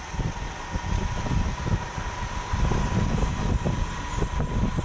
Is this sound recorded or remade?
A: recorded